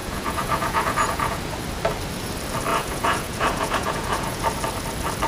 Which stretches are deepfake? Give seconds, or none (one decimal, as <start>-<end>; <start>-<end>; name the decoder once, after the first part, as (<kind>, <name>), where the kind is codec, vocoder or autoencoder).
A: 0.0-1.4 (vocoder, Vocos); 2.7-4.4